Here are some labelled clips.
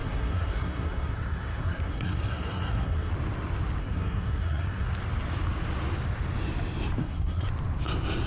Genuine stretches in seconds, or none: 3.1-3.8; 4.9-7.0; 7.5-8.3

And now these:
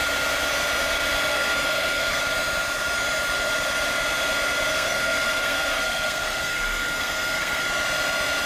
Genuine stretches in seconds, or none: 0.0-1.3; 2.2-4.7; 7.6-8.5

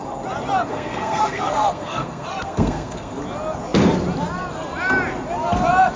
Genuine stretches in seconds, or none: 0.0-0.7; 3.2-6.0

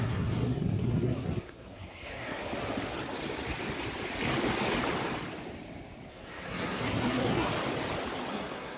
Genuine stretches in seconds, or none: 2.5-6.1; 7.5-8.3

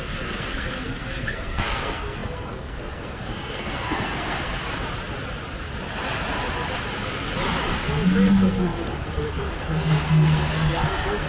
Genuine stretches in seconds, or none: 4.5-7.7

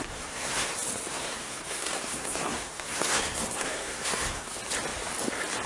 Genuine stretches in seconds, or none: 0.7-1.1; 4.5-5.7

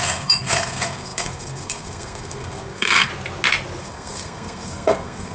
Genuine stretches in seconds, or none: 3.1-3.8

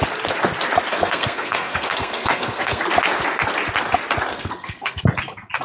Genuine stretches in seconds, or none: 0.0-0.9; 2.8-4.3; 5.0-5.6